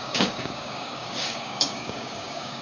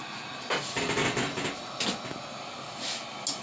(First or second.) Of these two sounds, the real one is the second